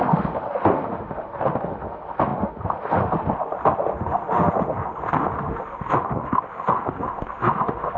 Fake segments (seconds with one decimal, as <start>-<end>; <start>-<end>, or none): 0.0-8.0